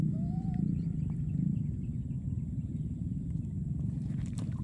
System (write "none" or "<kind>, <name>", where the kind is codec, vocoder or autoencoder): vocoder, BigVGAN v2